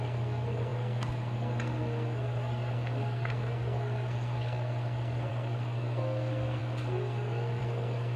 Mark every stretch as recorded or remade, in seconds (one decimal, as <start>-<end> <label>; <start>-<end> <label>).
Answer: 0.0-8.2 remade